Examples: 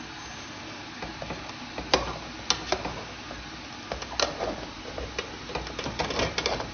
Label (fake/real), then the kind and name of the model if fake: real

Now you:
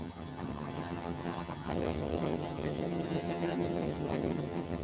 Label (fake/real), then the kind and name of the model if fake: fake, vocoder, HiFi-GAN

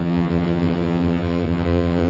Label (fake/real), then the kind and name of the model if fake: fake, vocoder, HiFi-GAN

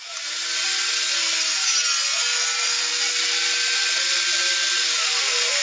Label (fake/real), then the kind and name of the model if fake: real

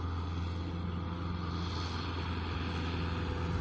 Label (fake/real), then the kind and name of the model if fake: real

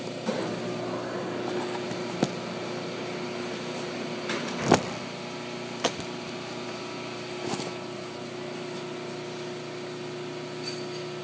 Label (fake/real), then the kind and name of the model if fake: real